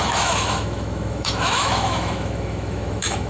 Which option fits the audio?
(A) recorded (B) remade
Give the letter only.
B